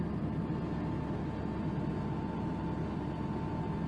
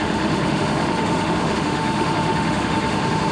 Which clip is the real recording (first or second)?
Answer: first